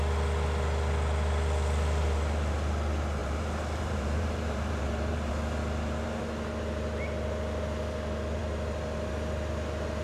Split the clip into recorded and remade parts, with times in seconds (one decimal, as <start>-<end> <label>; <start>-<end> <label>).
0.0-3.2 recorded; 3.2-5.3 remade; 5.3-10.0 recorded